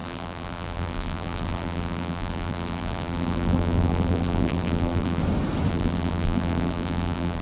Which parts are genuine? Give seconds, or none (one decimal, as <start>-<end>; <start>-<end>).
5.2-5.7